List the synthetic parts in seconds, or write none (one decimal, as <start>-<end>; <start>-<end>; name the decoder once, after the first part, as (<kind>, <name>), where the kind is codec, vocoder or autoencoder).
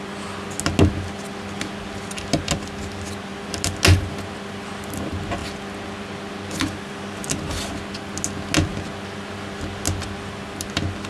none